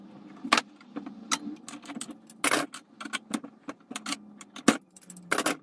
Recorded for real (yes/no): yes